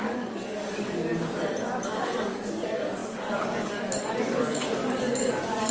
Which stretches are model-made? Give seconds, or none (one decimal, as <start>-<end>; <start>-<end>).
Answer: 0.0-1.1; 1.8-5.7